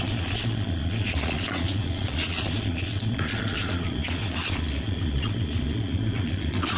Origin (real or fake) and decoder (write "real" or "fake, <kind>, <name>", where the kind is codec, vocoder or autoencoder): fake, vocoder, Vocos